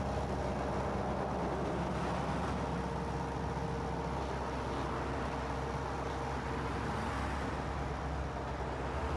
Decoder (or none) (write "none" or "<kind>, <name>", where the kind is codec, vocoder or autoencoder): none